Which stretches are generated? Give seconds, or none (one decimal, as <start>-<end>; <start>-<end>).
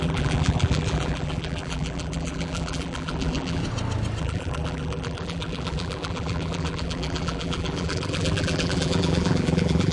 0.0-3.6; 4.2-9.9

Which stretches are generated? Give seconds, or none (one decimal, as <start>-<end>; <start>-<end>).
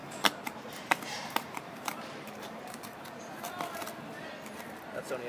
0.0-3.2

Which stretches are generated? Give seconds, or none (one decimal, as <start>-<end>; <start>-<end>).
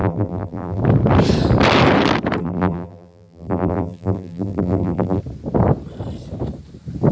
0.0-0.8; 2.4-5.2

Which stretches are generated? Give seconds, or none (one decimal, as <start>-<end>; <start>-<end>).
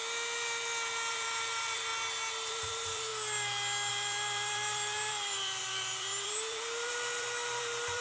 1.1-1.9; 2.5-3.1; 3.9-8.0